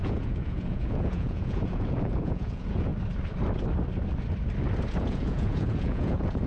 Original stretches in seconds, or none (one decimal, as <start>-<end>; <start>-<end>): 2.9-5.0